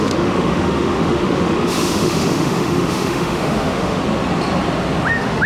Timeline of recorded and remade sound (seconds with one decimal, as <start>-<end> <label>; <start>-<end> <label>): 0.0-4.0 remade; 4.0-5.1 recorded; 5.1-5.5 remade